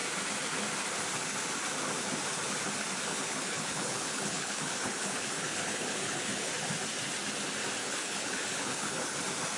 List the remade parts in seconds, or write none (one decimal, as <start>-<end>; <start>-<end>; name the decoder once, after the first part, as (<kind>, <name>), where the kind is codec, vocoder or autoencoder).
3.1-6.5 (codec, HILCodec); 7.8-9.2